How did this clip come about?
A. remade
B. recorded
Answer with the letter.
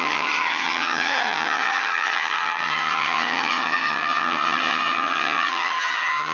A